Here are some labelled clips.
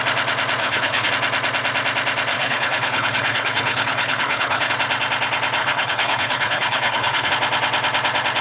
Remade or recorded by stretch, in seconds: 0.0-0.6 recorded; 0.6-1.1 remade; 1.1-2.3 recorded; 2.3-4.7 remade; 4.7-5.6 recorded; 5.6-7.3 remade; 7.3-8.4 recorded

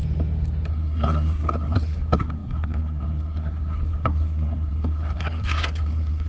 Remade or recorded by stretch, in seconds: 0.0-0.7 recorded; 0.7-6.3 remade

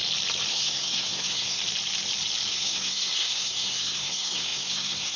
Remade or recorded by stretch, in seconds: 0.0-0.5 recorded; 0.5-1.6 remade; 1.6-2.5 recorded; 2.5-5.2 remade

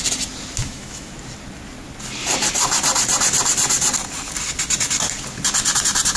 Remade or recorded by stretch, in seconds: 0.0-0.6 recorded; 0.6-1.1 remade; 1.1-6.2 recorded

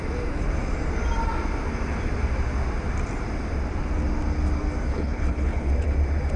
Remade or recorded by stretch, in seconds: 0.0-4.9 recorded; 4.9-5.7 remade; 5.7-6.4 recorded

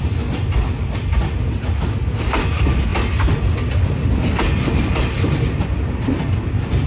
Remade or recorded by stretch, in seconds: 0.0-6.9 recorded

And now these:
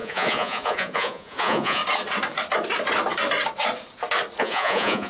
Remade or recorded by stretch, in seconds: 0.0-1.8 remade; 1.8-4.4 recorded; 4.4-5.1 remade

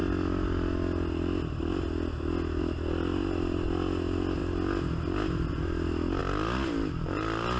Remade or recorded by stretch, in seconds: 0.0-6.2 recorded; 6.2-7.6 remade